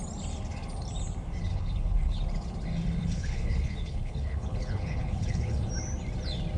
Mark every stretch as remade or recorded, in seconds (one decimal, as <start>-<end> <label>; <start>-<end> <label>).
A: 0.0-1.5 recorded; 1.5-2.2 remade; 2.2-3.0 recorded; 3.0-5.7 remade; 5.7-6.6 recorded